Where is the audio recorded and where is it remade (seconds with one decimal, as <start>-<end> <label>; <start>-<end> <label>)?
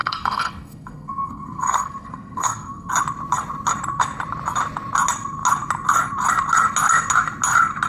0.0-2.9 remade; 2.9-7.9 recorded